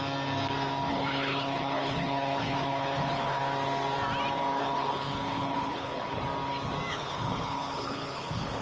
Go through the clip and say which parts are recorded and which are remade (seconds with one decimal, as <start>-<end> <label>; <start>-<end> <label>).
0.0-0.9 recorded; 0.9-3.4 remade; 3.4-4.6 recorded; 4.6-6.2 remade; 6.2-6.9 recorded; 6.9-8.6 remade